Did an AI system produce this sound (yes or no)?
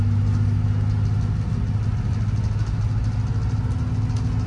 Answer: no